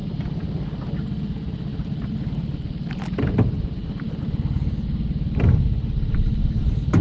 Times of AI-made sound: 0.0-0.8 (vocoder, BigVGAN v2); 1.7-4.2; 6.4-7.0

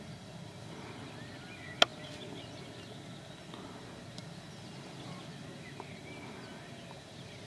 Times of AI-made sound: none

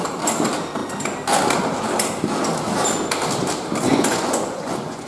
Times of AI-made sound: 3.9-5.1 (vocoder, Vocos)

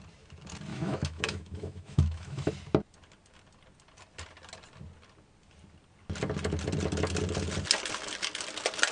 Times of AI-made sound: 0.7-2.5 (autoencoder, DAC-VAE)